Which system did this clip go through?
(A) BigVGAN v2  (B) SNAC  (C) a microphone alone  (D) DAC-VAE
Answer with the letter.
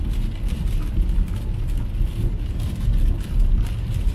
C